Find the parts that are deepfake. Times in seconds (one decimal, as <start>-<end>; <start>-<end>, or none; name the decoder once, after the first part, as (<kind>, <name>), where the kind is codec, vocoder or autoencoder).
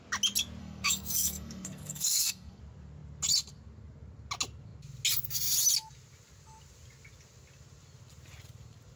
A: 0.6-2.6 (codec, SNAC)